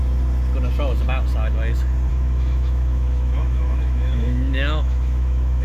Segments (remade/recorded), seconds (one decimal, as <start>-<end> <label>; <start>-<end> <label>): 0.0-2.1 recorded; 2.1-5.6 remade